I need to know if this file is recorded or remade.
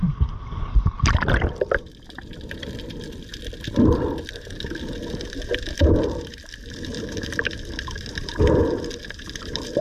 remade